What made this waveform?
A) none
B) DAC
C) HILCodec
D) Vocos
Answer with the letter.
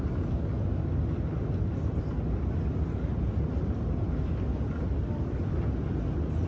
A